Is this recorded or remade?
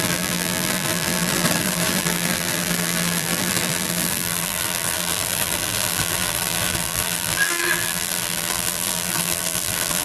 remade